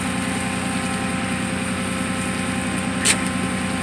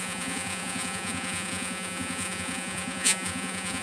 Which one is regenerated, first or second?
second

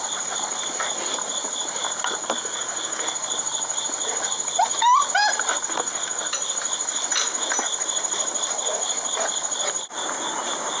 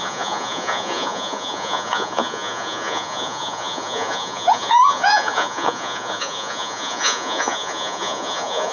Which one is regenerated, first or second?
second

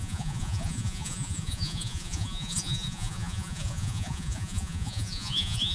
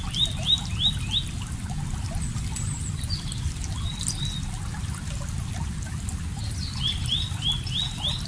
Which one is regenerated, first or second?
first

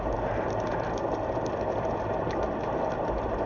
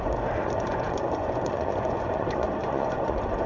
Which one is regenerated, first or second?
second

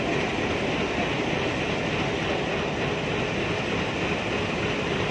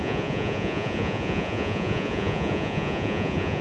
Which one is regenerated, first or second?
second